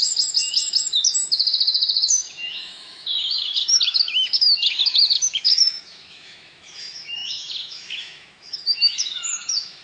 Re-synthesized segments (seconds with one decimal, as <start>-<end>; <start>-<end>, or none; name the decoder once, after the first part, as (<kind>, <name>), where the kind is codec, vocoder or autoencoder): 0.0-9.8 (autoencoder, DAC-VAE)